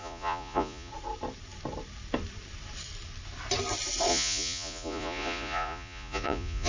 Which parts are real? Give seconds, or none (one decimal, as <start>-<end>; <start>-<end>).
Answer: 0.9-4.1